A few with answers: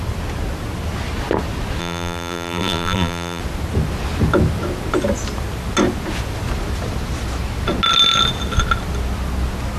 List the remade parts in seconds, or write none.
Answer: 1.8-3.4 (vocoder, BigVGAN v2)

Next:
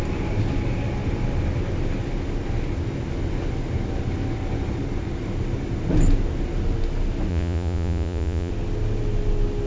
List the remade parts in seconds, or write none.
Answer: 7.3-8.5 (vocoder, Vocos)

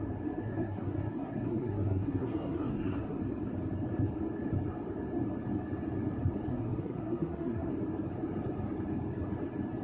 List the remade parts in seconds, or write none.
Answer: 0.4-3.2 (codec, SNAC); 6.5-7.7

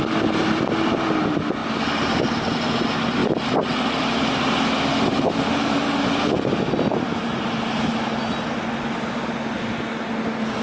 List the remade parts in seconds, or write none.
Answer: 3.2-3.8 (vocoder, BigVGAN v2)